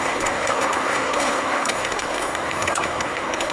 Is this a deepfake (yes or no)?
yes